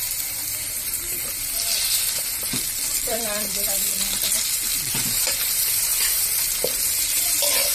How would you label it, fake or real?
fake